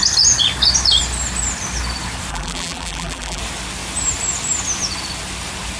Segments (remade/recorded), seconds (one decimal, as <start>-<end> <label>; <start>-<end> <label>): 0.0-2.3 recorded; 2.3-3.4 remade; 3.4-5.8 recorded